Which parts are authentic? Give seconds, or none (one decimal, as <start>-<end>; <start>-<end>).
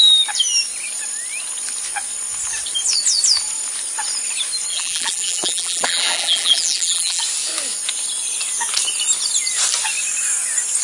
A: 0.0-4.7; 7.2-10.8